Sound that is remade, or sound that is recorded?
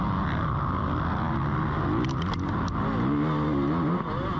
recorded